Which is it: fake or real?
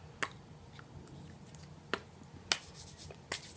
real